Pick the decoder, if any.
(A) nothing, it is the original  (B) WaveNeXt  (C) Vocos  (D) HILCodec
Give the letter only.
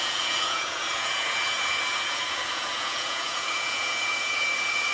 C